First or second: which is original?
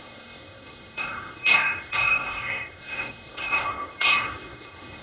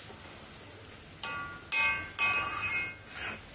second